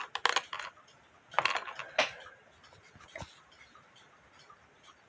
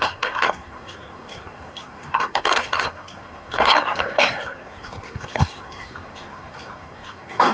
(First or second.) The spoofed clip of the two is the second